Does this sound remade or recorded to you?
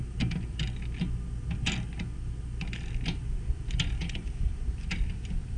recorded